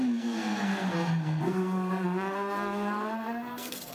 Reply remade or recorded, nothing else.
remade